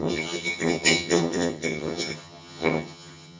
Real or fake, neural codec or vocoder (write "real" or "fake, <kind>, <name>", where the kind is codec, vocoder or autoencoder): fake, vocoder, HiFi-GAN